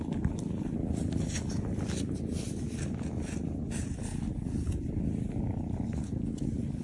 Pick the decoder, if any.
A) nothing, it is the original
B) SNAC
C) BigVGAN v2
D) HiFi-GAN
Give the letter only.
A